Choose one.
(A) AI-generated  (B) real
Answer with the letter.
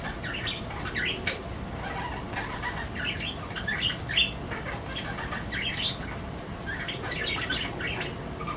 B